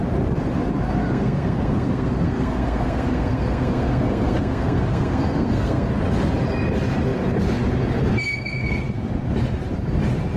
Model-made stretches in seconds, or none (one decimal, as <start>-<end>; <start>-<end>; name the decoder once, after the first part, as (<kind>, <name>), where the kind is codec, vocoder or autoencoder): 1.0-5.9 (codec, SNAC)